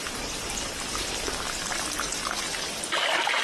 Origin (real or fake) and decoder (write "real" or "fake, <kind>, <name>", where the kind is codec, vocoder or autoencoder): real